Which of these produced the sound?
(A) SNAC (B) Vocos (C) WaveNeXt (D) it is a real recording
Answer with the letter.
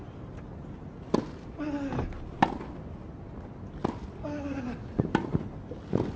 D